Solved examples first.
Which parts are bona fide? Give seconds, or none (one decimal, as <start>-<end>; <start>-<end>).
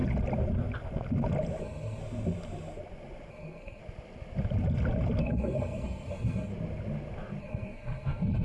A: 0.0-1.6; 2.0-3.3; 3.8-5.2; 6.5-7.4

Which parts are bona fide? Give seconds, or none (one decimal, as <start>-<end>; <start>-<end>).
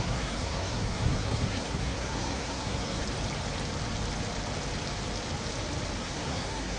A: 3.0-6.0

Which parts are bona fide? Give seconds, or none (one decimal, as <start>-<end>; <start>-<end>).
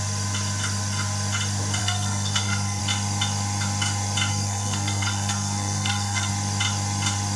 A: 0.0-1.8; 2.8-4.3; 6.3-7.4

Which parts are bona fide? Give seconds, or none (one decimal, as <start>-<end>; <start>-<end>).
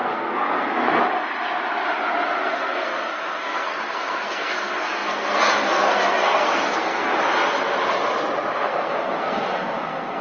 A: 0.9-2.4; 7.1-8.6